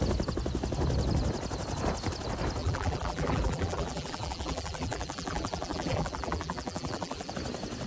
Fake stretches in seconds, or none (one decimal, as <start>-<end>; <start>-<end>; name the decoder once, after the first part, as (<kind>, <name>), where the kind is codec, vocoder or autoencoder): 2.6-7.3 (vocoder, BigVGAN v2)